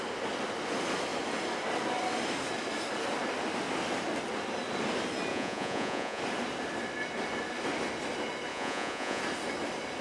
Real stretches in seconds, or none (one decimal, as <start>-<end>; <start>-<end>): 0.0-5.3; 6.2-8.5; 9.2-10.0